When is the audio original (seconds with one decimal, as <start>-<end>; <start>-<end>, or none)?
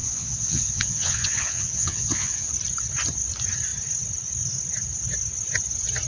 2.5-6.1